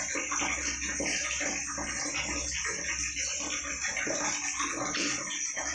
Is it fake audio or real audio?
real